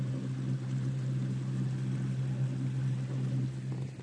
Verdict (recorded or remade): recorded